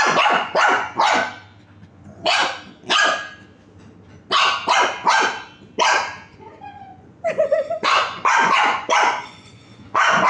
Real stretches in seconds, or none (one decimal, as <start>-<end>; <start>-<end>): 1.2-1.9; 2.4-6.3